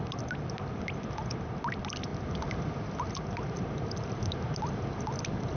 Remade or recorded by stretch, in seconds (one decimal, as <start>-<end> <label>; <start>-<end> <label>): 0.0-5.6 recorded